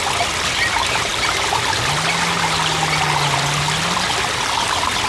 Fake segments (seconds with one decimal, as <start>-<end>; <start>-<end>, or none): none